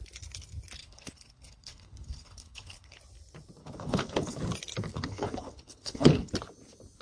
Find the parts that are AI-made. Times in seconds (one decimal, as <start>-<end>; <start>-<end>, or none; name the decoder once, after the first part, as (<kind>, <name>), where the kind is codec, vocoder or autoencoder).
0.8-3.0 (codec, HILCodec); 3.6-4.4; 4.9-6.3